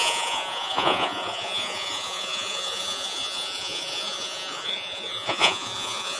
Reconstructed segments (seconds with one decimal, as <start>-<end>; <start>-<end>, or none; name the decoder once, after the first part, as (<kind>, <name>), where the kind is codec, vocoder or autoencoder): 0.0-6.2 (vocoder, Vocos)

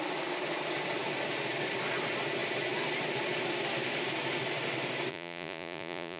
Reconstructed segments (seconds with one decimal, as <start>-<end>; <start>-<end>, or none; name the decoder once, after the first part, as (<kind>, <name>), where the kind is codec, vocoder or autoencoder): 5.1-6.2 (vocoder, Vocos)

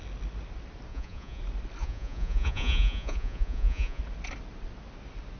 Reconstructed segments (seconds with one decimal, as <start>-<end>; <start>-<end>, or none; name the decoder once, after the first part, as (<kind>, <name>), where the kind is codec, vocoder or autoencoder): 0.9-1.4 (vocoder, Vocos); 1.8-4.0

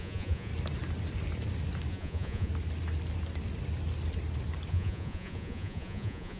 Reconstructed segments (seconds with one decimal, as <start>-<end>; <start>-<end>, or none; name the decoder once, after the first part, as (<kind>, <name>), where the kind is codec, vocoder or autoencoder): 0.0-0.5 (vocoder, Vocos); 1.9-2.5; 4.7-6.4

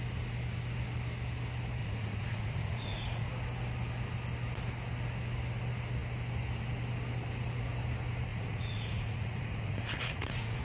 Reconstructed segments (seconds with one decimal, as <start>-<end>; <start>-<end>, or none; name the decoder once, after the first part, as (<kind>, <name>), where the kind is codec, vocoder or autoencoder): 1.8-3.3 (vocoder, Vocos); 8.3-10.6